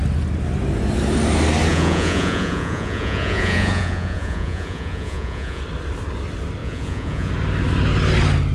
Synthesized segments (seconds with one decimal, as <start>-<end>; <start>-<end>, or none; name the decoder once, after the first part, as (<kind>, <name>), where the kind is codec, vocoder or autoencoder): 1.7-5.6 (vocoder, Vocos); 6.6-7.3